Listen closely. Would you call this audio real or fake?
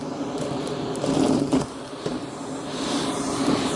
fake